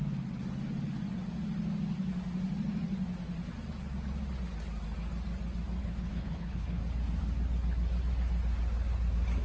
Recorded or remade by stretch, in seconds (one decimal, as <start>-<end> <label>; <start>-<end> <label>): 0.0-5.8 recorded; 5.8-6.8 remade; 6.8-9.4 recorded